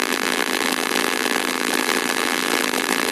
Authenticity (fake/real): fake